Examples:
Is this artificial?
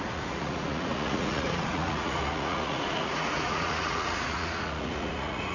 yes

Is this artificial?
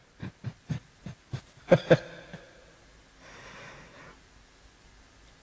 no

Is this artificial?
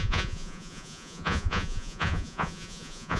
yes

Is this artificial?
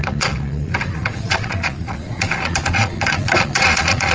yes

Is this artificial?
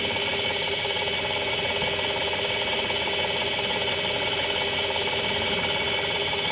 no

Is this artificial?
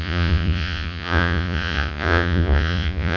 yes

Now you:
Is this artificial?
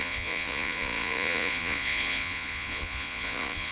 yes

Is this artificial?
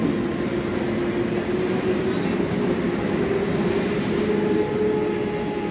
no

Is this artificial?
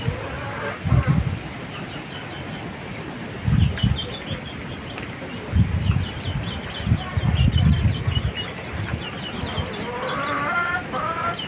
no